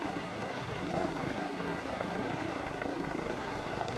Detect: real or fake fake